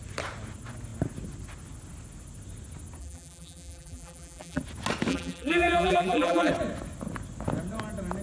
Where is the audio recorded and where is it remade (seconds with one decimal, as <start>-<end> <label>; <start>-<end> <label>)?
0.0-3.0 recorded; 3.0-4.6 remade; 4.6-5.1 recorded; 5.1-6.5 remade; 6.5-8.2 recorded